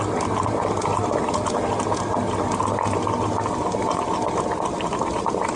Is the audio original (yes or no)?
yes